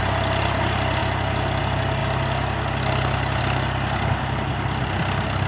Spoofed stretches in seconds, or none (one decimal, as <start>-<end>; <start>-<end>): none